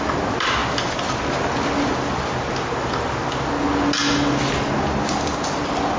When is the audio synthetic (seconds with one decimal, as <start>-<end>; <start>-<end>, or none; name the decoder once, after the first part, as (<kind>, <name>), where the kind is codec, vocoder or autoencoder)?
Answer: none